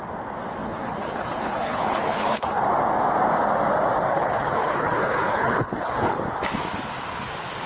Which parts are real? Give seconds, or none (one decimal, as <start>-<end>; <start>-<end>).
0.0-0.6; 2.6-4.1; 6.2-7.7